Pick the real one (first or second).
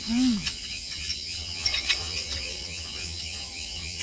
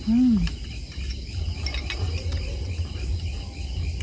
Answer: second